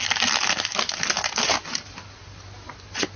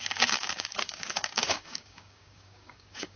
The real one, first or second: first